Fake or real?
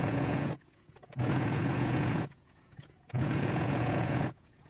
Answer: fake